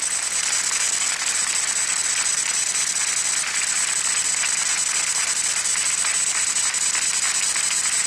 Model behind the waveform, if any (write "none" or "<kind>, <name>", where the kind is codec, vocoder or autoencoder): none